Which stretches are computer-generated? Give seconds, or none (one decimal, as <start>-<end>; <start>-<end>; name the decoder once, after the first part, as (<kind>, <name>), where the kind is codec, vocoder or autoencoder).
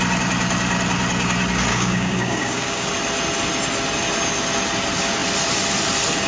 1.7-2.9 (codec, DAC)